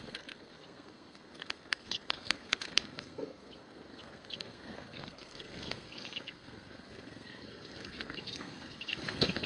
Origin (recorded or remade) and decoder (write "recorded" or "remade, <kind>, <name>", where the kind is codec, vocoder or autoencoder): remade, codec, SNAC